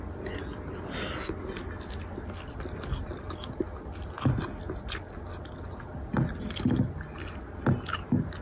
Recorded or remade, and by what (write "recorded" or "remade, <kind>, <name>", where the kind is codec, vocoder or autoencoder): recorded